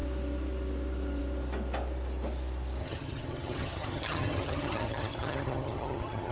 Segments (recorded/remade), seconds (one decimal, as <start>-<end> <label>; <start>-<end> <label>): 0.0-2.8 recorded; 2.8-6.3 remade